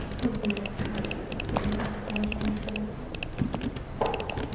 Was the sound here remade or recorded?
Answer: recorded